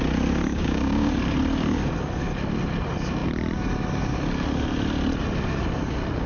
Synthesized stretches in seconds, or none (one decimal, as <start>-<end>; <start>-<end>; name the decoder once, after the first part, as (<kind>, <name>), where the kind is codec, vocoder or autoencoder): 0.5-1.1 (codec, DAC)